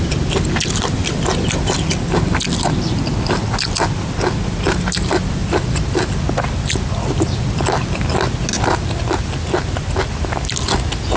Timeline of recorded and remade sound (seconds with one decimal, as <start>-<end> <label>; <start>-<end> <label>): 0.0-11.2 recorded